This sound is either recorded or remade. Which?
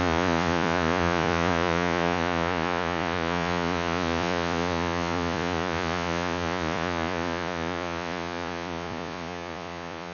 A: remade